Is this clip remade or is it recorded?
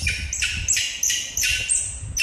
recorded